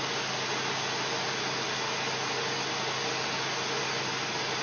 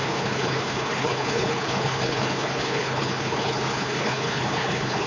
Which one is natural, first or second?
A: first